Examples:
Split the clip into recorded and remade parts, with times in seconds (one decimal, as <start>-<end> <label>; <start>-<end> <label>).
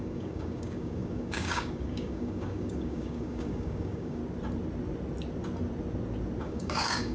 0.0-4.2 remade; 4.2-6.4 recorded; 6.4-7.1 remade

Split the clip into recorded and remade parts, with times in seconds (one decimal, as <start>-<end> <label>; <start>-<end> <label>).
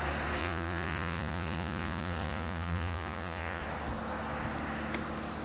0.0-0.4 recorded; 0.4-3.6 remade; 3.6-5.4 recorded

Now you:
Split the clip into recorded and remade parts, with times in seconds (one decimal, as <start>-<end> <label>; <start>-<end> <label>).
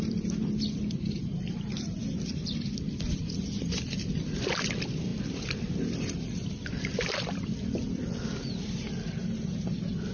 0.0-9.2 remade; 9.2-10.1 recorded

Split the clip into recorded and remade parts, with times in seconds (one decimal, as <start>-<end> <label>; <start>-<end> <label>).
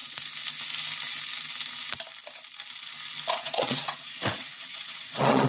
0.0-3.3 recorded; 3.3-5.5 remade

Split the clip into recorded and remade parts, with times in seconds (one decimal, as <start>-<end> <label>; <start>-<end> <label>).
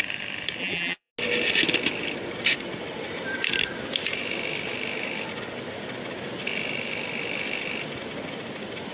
0.0-0.6 recorded; 0.6-1.1 remade; 1.1-8.9 recorded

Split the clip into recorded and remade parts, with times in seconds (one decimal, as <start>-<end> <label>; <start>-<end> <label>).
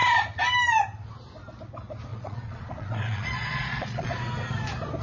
0.0-2.1 recorded; 2.1-4.1 remade; 4.1-5.0 recorded